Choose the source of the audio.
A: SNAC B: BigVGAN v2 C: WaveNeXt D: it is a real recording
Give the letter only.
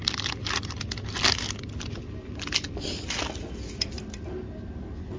D